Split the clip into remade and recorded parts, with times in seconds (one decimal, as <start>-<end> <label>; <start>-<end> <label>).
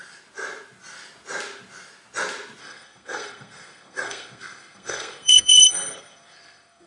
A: 0.0-2.6 recorded; 2.6-6.9 remade